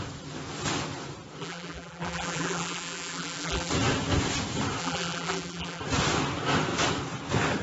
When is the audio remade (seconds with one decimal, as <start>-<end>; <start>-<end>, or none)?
1.4-3.7; 4.8-5.8